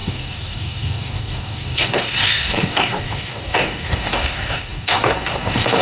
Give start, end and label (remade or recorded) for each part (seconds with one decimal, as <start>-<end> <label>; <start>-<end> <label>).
0.0-5.8 remade